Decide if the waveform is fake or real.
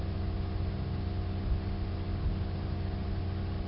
real